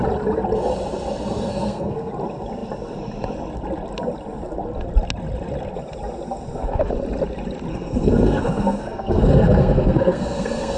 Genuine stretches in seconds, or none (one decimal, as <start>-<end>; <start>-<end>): 0.0-1.5; 2.1-7.7